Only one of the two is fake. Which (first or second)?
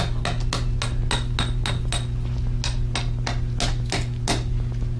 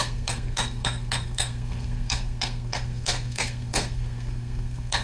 second